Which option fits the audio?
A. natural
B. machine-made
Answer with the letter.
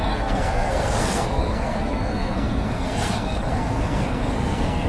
B